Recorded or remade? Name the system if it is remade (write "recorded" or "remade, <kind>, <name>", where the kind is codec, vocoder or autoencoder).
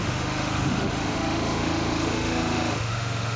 remade, autoencoder, DAC-VAE